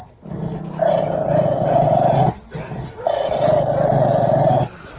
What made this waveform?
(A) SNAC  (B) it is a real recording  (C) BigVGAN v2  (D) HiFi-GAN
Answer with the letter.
B